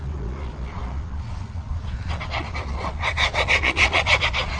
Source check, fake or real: fake